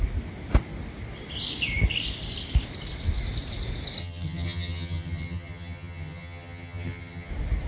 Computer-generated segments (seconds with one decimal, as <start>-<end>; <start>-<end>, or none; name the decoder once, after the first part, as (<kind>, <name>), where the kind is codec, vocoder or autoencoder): 4.0-7.3 (vocoder, HiFi-GAN)